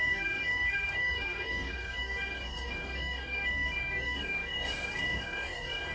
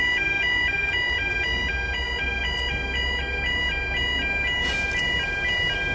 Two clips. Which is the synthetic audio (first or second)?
first